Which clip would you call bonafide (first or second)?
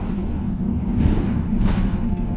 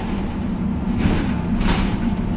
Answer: second